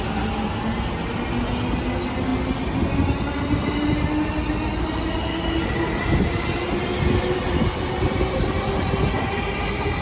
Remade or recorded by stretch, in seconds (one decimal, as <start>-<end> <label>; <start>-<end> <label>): 0.0-10.0 recorded